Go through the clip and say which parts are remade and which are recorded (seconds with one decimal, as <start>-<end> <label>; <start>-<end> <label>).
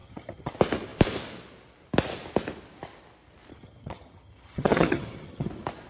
0.0-0.5 remade; 0.5-3.5 recorded; 3.5-5.5 remade; 5.5-5.9 recorded